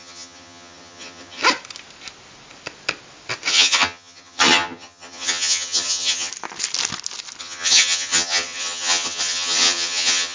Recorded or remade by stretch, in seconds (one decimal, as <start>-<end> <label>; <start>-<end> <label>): 0.0-1.4 remade; 1.4-3.5 recorded; 3.5-6.3 remade; 6.3-7.4 recorded; 7.4-10.3 remade